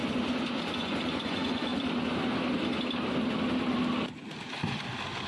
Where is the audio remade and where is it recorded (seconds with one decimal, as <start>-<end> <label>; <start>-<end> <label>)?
0.0-0.8 recorded; 0.8-1.7 remade; 1.7-5.3 recorded